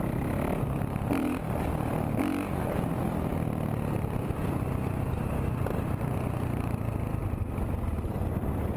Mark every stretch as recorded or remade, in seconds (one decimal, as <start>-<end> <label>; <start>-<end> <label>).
0.0-8.8 recorded